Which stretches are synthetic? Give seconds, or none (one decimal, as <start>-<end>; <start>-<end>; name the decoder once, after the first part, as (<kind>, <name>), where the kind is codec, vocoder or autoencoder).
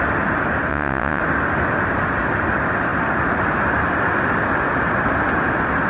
0.7-1.2 (vocoder, WaveNeXt)